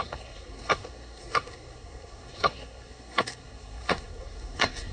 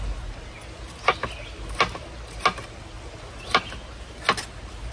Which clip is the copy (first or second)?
first